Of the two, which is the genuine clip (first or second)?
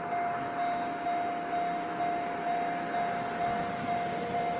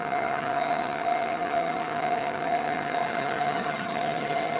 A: first